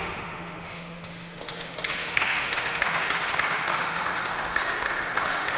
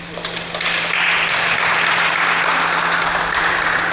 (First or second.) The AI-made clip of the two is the first